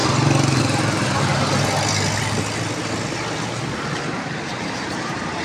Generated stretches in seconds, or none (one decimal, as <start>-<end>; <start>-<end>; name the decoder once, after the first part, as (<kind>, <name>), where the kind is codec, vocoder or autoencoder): 0.6-1.3 (vocoder, BigVGAN v2); 4.5-5.4